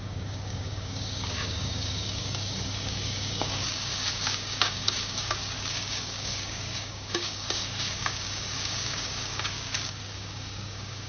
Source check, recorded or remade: remade